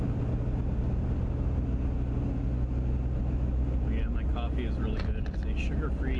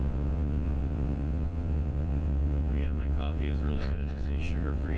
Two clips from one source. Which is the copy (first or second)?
second